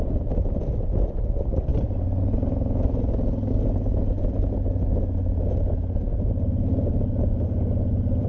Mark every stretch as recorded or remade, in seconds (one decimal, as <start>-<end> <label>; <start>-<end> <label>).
0.0-8.3 recorded